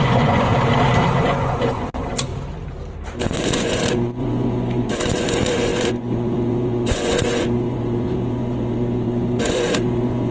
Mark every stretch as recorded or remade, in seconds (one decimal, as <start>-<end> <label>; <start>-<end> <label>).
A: 0.0-0.5 remade; 0.5-1.1 recorded; 1.1-2.3 remade; 2.3-3.2 recorded; 3.2-10.3 remade